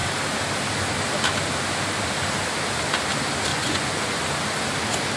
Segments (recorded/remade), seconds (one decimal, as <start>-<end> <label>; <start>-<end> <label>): 0.0-3.5 recorded; 3.5-4.2 remade; 4.2-5.2 recorded